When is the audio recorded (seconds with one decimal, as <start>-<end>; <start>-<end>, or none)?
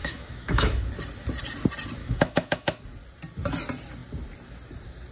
0.9-2.0; 2.8-5.1